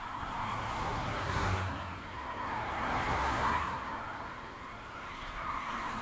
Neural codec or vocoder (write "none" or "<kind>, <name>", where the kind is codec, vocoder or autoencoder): codec, SNAC